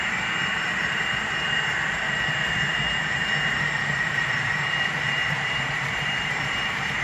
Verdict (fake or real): fake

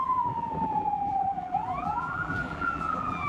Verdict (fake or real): fake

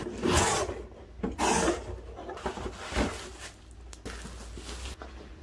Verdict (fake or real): real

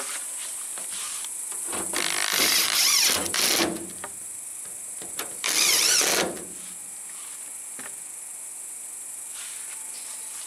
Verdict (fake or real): real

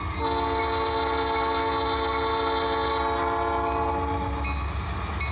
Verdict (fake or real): real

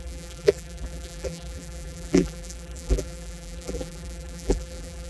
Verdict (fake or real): fake